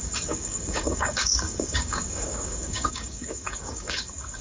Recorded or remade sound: remade